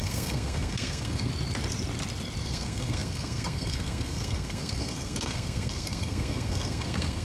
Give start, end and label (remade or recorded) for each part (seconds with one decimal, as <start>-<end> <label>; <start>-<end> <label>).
0.0-1.3 remade; 1.3-2.4 recorded; 2.4-7.2 remade